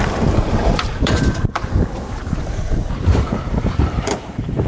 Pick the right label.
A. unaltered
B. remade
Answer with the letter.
B